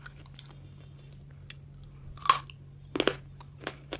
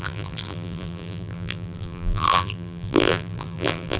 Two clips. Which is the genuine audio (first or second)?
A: first